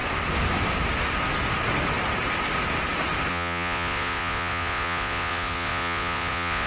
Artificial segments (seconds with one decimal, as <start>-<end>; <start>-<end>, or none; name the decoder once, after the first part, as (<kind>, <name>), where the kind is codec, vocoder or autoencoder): 3.3-6.7 (vocoder, Vocos)